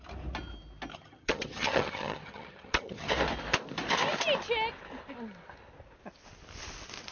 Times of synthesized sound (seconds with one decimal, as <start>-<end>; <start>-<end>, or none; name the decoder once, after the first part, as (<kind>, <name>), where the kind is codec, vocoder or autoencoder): 0.9-3.1 (vocoder, HiFi-GAN)